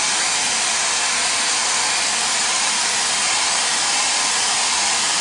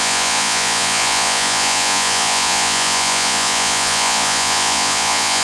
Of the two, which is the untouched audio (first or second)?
first